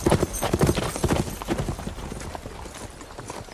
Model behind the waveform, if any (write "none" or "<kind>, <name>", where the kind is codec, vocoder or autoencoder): none